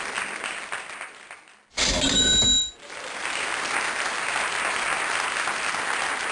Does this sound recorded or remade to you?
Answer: recorded